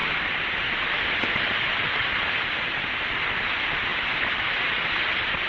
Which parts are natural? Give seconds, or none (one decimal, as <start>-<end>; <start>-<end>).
0.0-5.5